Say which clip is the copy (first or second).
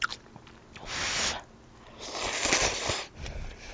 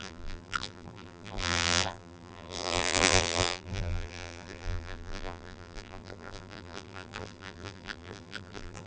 second